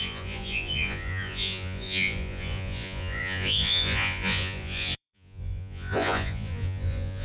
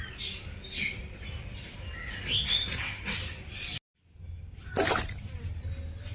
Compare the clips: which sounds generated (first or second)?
first